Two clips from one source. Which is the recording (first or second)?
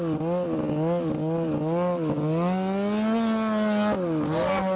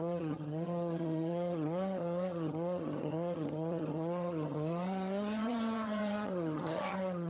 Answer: first